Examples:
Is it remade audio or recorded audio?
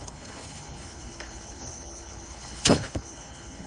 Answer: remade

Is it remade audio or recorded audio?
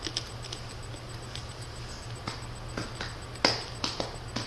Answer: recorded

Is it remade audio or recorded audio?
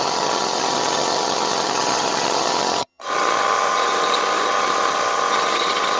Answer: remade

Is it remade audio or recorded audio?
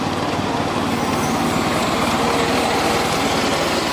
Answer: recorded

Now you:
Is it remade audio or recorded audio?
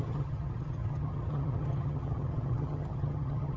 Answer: remade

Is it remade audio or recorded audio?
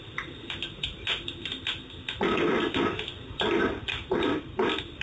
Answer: recorded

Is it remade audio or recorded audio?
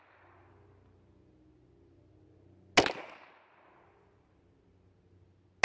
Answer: recorded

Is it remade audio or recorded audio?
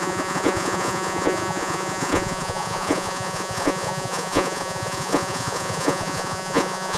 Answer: remade